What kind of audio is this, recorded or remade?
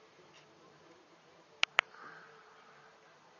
remade